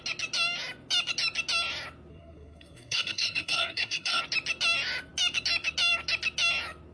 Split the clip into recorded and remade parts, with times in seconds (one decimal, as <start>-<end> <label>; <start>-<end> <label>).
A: 0.0-2.1 recorded; 2.1-4.2 remade; 4.2-6.9 recorded